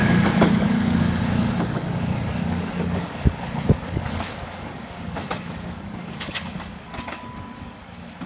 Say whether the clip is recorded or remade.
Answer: remade